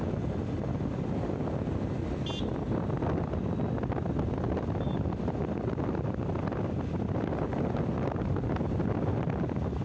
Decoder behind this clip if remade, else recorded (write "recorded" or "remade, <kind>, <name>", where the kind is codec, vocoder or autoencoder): recorded